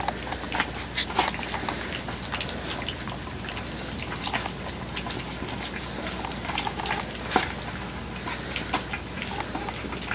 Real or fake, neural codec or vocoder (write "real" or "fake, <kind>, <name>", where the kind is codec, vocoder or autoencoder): real